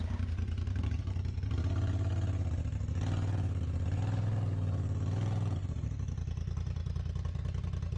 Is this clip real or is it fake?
real